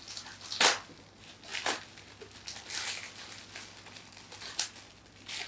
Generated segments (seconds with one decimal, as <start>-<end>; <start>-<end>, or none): none